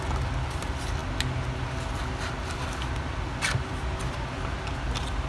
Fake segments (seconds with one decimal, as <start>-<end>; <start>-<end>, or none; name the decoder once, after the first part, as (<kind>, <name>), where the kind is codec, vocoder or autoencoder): none

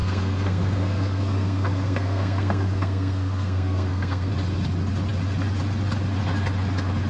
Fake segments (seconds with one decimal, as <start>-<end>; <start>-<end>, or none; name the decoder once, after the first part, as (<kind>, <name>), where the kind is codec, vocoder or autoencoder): 0.0-4.3 (codec, SNAC)

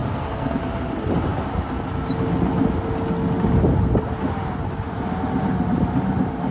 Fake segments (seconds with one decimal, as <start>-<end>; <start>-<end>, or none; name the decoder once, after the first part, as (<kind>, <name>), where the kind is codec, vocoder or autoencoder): 0.0-0.6 (codec, SNAC)

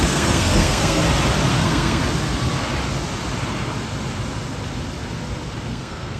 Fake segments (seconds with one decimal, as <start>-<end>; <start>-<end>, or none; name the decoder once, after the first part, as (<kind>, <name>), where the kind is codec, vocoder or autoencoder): 0.0-1.0 (codec, SNAC); 1.5-2.0; 5.7-6.2

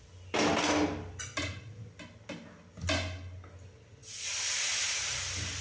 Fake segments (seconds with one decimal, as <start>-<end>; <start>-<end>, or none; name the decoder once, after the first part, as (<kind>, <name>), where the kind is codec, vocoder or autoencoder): none